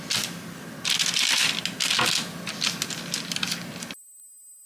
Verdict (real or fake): real